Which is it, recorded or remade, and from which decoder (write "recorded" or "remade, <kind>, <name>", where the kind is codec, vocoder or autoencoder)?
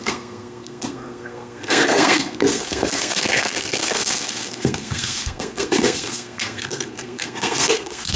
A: remade, codec, SNAC